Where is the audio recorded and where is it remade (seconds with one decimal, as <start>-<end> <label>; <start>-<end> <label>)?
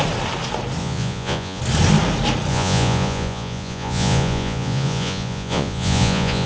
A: 0.0-0.8 recorded; 0.8-1.6 remade; 1.6-2.5 recorded; 2.5-6.5 remade